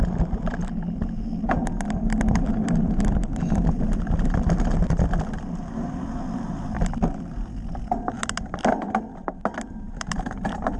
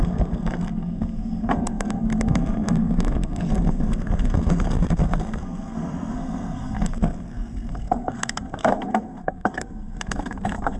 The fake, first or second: second